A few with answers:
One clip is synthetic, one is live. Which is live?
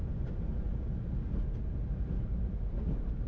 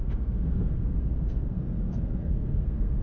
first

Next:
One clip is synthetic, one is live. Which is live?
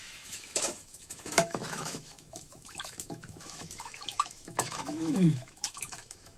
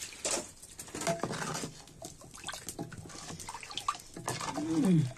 second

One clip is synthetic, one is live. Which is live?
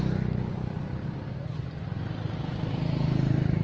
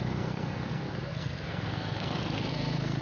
first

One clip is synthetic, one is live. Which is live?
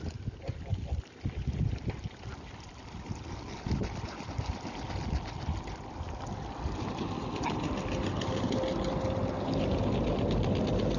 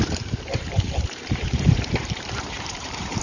first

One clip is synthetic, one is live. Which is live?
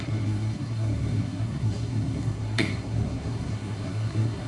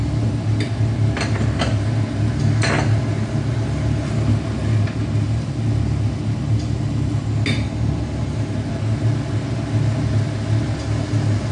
second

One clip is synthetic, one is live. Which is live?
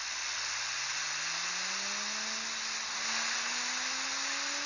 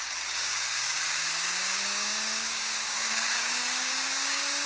first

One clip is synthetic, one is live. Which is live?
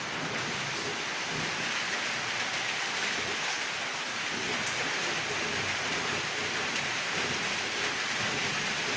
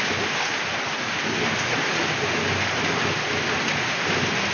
second